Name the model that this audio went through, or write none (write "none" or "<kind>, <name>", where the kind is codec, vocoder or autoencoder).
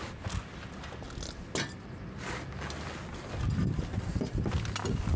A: none